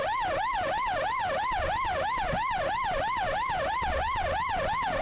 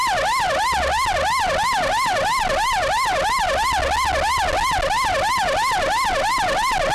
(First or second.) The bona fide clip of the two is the second